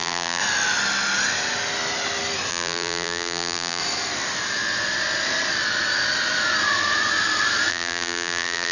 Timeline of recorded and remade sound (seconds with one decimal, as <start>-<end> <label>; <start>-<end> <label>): 0.0-0.4 remade; 0.4-2.5 recorded; 2.5-3.8 remade; 3.8-7.7 recorded; 7.7-8.7 remade